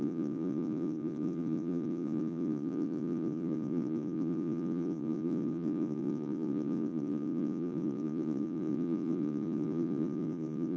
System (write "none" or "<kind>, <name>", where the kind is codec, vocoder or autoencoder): vocoder, Vocos